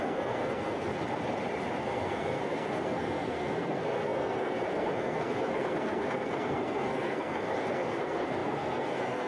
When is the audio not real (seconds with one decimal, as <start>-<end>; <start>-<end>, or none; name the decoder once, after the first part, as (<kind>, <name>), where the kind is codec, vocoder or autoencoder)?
0.0-0.9 (codec, SNAC); 1.8-9.3